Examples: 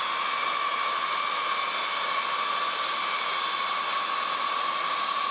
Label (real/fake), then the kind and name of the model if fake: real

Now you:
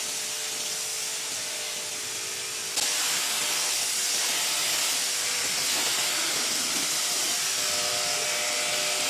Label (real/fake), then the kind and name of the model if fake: real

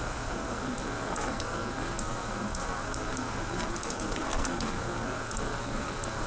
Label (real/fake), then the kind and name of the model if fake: fake, codec, SNAC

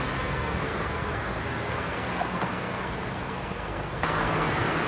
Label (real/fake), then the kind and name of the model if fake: fake, codec, SNAC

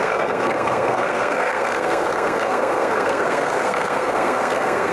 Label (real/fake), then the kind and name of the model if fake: fake, codec, SNAC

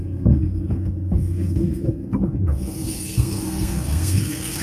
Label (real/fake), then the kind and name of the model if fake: fake, codec, SNAC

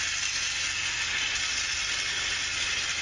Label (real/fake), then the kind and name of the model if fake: real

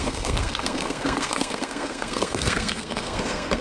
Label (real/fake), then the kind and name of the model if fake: fake, codec, SNAC